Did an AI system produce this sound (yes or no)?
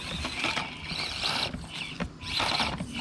no